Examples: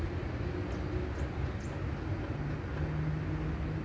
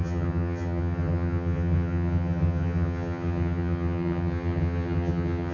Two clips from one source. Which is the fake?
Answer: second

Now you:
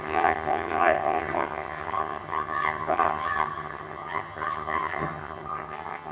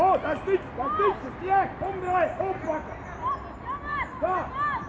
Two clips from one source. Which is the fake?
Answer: first